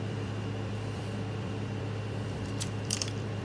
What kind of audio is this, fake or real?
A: fake